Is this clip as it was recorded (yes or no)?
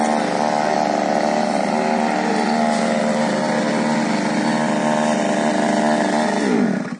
yes